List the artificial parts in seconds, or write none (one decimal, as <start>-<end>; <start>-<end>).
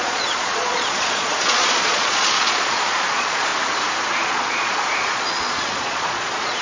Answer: 0.0-3.5; 4.2-6.6